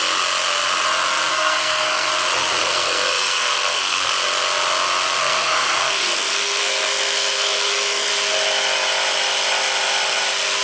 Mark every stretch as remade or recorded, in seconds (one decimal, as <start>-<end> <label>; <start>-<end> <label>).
0.0-1.3 recorded; 1.3-2.1 remade; 2.1-2.6 recorded; 2.6-4.1 remade; 4.1-5.2 recorded; 5.2-8.1 remade; 8.1-10.6 recorded